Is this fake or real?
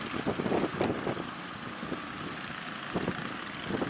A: real